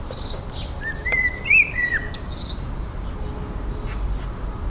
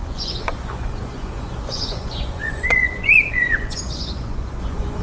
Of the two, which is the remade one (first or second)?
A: second